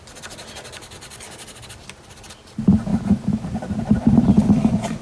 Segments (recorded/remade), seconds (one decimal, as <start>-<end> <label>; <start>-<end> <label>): 0.0-2.9 recorded; 2.9-4.4 remade; 4.4-5.0 recorded